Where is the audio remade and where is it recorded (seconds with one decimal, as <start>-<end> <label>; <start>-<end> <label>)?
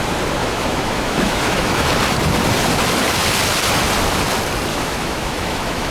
0.0-0.4 recorded; 0.4-1.9 remade; 1.9-4.7 recorded; 4.7-5.9 remade